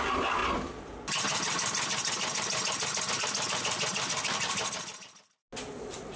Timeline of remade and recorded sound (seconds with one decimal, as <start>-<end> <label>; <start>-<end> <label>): 0.0-6.2 recorded